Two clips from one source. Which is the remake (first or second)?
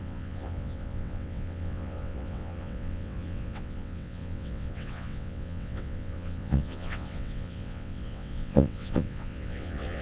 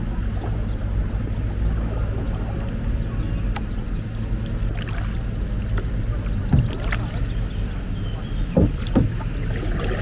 first